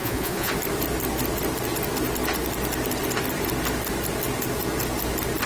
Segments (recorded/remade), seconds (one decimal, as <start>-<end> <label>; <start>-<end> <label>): 0.0-0.5 remade; 0.5-5.5 recorded

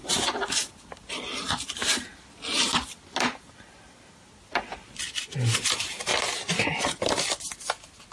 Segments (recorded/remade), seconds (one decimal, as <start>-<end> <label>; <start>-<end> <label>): 0.0-8.1 recorded

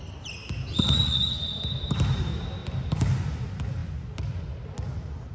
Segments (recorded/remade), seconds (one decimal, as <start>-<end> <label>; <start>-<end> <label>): 0.0-0.7 recorded; 0.7-1.6 remade; 1.6-5.3 recorded

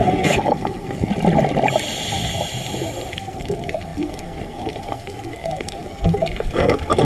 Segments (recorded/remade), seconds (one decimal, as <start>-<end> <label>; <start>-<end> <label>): 0.0-1.1 remade; 1.1-3.1 recorded; 3.1-7.0 remade

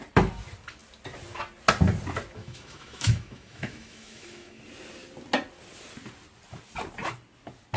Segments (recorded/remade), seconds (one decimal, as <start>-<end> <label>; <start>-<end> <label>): 0.0-2.4 recorded; 2.4-4.6 remade; 4.6-7.8 recorded

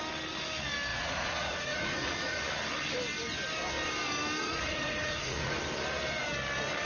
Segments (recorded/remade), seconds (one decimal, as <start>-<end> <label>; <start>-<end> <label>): 0.0-0.9 recorded; 0.9-2.4 remade; 2.4-4.4 recorded; 4.4-5.6 remade; 5.6-6.8 recorded

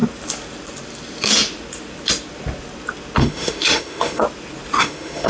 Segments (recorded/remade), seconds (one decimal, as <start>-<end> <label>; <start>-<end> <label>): 0.0-3.2 recorded; 3.2-4.2 remade; 4.2-4.8 recorded; 4.8-5.3 remade